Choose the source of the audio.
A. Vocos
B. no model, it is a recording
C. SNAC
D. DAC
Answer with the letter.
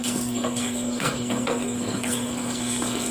C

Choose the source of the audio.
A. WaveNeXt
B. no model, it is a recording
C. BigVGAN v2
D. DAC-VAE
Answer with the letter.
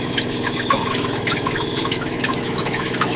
D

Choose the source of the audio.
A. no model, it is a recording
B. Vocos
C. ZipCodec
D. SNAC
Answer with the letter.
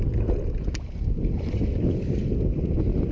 A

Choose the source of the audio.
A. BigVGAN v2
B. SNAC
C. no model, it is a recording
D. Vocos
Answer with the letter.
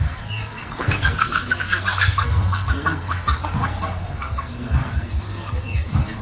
B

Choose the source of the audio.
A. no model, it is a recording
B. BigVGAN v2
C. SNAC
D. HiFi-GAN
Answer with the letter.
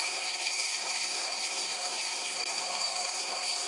C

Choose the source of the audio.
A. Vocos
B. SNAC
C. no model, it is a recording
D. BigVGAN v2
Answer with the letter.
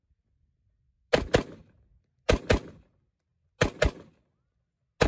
C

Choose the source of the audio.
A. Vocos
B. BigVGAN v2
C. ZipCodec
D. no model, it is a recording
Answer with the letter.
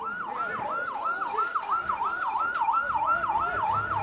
D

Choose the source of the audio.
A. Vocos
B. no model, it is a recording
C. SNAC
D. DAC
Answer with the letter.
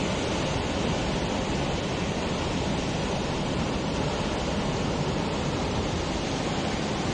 B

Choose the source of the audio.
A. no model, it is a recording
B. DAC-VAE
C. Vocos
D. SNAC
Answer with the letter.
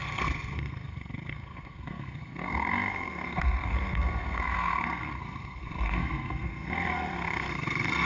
D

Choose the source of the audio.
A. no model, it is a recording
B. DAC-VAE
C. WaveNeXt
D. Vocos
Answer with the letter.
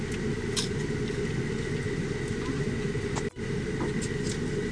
A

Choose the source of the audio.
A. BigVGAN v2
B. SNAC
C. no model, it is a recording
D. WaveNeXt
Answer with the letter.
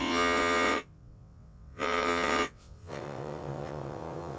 D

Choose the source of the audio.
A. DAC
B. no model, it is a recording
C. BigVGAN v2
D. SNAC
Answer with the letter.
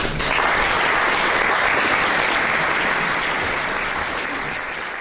B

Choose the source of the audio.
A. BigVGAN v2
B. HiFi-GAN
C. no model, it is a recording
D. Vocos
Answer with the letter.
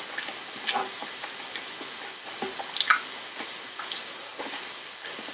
C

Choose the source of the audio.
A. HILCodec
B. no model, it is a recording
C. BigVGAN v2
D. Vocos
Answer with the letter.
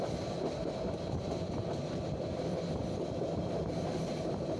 C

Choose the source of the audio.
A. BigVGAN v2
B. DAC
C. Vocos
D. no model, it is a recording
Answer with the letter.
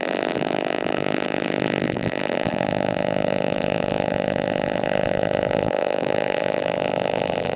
A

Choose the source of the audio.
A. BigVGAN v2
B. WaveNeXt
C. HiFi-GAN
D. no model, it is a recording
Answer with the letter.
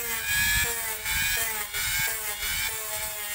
D